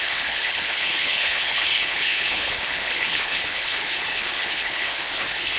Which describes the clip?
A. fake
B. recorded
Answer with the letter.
A